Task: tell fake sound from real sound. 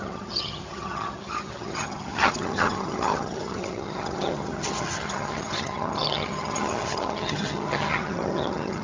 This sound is fake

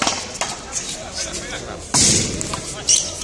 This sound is real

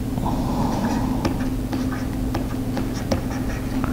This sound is real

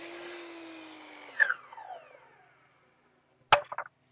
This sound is real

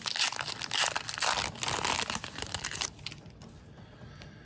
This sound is real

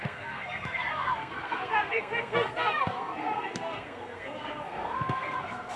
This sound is fake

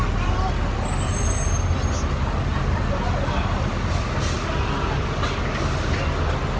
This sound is real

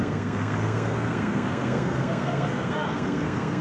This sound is fake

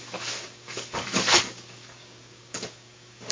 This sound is fake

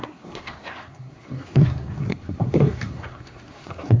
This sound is fake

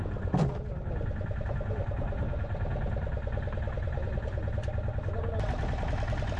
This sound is real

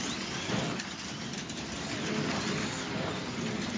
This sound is real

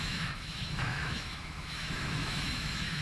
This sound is fake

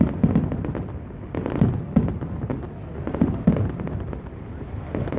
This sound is real